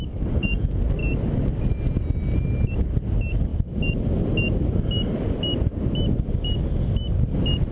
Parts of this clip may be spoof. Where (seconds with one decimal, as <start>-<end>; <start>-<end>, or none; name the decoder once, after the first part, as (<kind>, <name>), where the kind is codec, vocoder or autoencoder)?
none

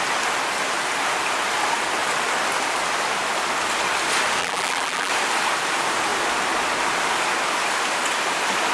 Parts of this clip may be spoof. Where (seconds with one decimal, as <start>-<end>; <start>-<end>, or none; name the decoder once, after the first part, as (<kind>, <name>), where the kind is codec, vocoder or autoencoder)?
4.4-5.1 (vocoder, BigVGAN v2)

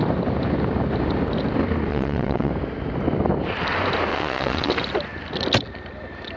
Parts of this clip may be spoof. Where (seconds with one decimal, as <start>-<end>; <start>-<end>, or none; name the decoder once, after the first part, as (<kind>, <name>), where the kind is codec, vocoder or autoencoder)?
1.9-2.5 (vocoder, WaveNeXt); 4.1-4.7

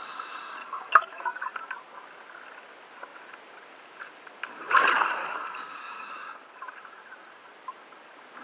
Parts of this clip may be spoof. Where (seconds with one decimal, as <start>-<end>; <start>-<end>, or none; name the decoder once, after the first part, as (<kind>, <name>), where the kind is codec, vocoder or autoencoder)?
0.6-1.5 (codec, DAC); 5.2-6.1

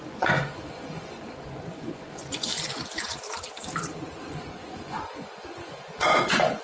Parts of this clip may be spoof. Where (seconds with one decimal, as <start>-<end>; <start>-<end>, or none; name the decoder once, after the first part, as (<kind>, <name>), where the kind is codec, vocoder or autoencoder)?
0.0-2.5 (vocoder, Vocos); 4.3-6.6

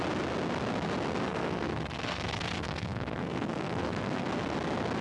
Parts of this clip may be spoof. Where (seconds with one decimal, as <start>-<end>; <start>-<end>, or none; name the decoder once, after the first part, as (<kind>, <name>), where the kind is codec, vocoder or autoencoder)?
1.3-4.3 (codec, SNAC)

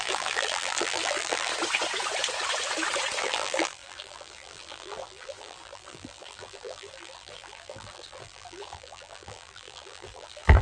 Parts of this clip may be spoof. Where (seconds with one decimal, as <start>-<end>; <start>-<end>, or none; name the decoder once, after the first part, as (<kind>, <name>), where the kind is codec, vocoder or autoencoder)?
0.0-1.5 (vocoder, BigVGAN v2); 3.2-10.6